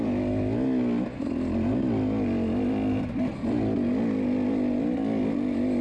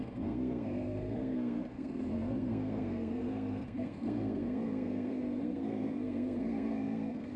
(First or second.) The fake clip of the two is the second